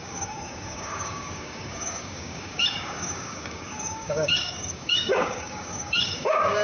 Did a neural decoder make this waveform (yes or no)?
yes